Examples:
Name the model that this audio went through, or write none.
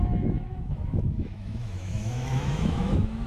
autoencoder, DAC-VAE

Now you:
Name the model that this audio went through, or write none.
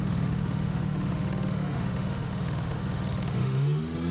autoencoder, DAC-VAE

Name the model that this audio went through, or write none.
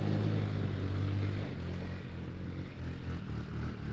none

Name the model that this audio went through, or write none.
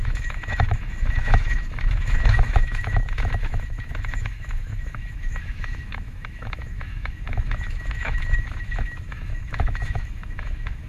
autoencoder, DAC-VAE